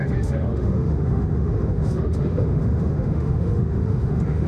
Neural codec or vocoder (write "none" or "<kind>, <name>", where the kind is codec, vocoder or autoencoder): autoencoder, DAC-VAE